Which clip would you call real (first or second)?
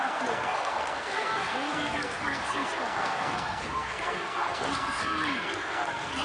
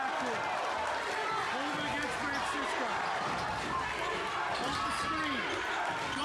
second